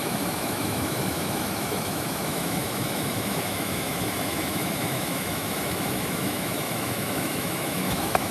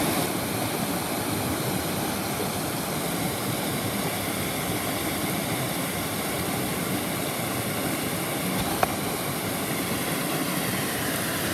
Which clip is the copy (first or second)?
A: first